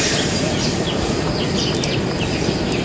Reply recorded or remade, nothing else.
recorded